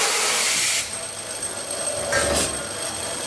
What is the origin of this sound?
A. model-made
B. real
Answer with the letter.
B